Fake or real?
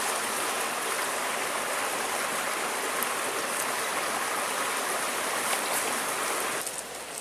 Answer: real